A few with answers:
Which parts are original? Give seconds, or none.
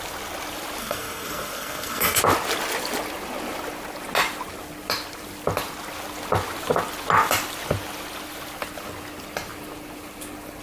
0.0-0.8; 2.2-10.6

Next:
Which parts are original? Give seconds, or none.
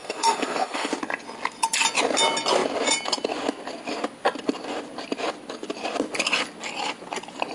0.9-7.5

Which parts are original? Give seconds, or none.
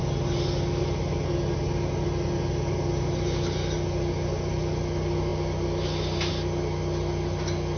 0.0-7.8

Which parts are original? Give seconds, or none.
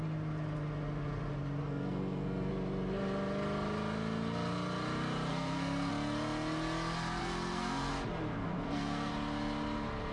0.0-1.6; 2.5-5.3; 5.9-7.2; 7.9-8.3; 9.1-10.1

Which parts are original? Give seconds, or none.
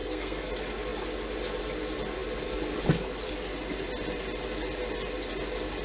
0.5-5.8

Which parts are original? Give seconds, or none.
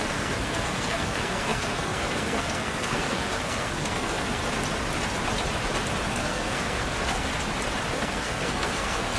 4.4-6.1; 7.3-7.9